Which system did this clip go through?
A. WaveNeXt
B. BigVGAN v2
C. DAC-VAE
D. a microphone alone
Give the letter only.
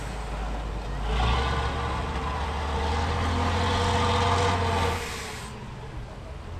D